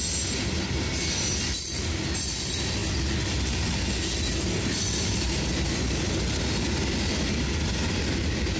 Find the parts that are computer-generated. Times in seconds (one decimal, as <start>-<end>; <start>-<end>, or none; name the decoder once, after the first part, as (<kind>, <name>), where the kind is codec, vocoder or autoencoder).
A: none